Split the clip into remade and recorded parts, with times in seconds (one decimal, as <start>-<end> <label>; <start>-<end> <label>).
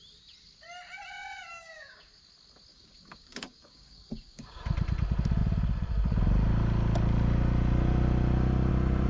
0.0-1.5 recorded; 1.5-2.1 remade; 2.1-2.7 recorded; 2.7-4.6 remade; 4.6-9.1 recorded